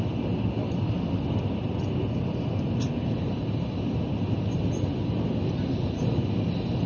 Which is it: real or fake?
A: real